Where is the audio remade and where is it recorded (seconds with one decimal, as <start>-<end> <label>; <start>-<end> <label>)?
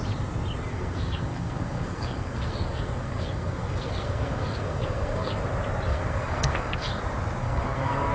0.0-0.7 recorded; 0.7-5.4 remade; 5.4-5.9 recorded; 5.9-7.0 remade; 7.0-7.4 recorded; 7.4-8.1 remade